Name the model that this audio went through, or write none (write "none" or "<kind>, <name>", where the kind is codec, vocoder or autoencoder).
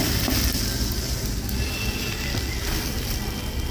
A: none